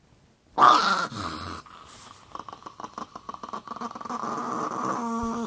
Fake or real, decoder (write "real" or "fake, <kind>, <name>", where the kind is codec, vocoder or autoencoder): real